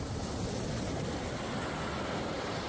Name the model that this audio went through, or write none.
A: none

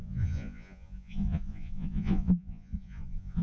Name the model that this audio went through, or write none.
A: vocoder, Vocos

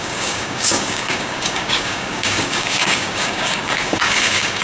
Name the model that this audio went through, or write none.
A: codec, DAC